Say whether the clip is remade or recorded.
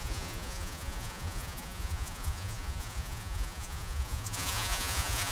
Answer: remade